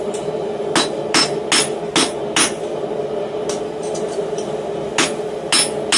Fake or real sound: real